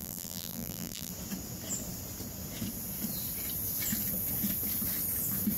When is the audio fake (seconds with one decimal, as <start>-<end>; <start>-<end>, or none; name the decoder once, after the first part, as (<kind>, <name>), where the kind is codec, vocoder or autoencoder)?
0.0-1.1 (vocoder, BigVGAN v2)